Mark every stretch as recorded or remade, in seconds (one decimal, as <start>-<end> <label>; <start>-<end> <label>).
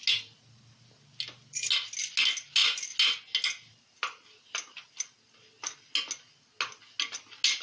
0.0-7.6 recorded